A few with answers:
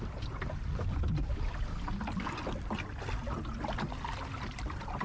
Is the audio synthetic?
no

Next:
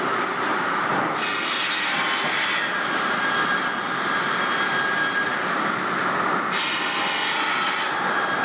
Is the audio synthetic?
no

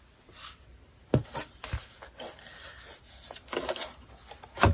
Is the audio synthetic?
no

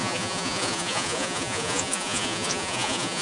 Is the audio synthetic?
yes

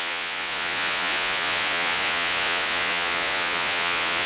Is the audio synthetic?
yes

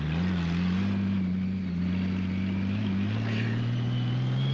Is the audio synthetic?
no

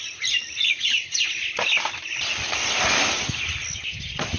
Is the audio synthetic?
no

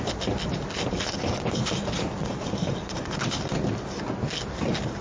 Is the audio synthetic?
no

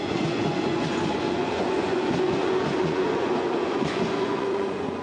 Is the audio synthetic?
yes